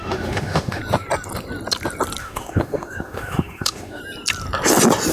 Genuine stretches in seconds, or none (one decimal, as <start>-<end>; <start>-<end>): 0.8-2.2; 4.0-5.1